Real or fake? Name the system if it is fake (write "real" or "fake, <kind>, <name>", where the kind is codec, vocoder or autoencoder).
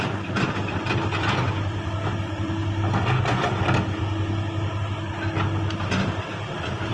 fake, vocoder, BigVGAN v2